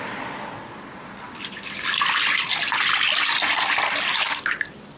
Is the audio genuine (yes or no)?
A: yes